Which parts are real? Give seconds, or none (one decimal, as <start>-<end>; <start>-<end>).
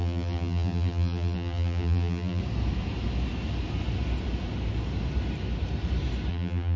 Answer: 2.4-6.3